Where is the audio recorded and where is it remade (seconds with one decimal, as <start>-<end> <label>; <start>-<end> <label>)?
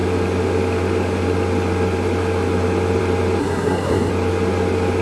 0.0-3.4 recorded; 3.4-4.1 remade; 4.1-5.0 recorded